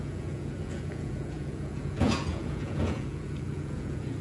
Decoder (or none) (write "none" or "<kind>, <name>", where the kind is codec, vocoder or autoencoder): vocoder, Vocos